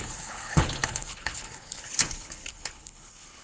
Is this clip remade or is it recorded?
remade